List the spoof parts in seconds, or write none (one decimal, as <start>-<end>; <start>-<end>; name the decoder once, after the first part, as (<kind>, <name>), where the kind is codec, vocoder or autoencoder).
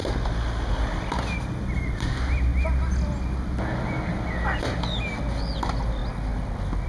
none